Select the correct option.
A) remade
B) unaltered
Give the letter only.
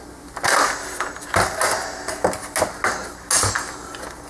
B